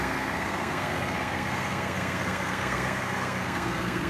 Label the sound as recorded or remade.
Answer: remade